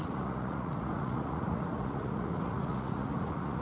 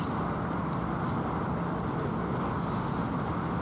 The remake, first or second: first